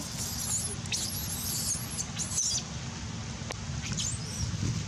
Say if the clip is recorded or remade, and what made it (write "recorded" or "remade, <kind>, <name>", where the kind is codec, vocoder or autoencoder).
recorded